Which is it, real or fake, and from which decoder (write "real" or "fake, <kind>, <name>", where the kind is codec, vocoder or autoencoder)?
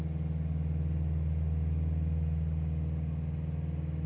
real